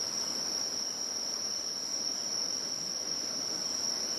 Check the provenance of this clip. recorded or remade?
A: remade